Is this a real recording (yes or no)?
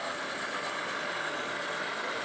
no